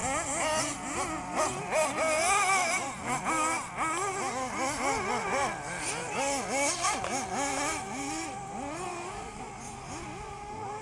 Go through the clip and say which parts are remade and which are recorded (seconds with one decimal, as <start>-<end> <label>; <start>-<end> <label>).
0.0-8.9 recorded; 8.9-9.4 remade; 9.4-10.8 recorded